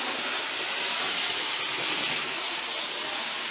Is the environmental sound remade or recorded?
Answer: recorded